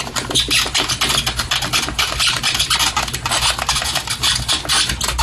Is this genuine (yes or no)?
yes